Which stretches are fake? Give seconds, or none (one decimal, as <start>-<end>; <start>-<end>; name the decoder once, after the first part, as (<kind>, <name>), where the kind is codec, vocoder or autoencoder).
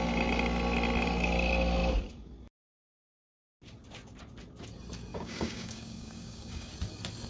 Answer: 5.1-6.7 (codec, DAC)